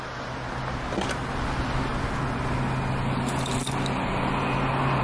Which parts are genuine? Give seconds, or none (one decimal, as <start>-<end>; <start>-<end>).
0.0-5.0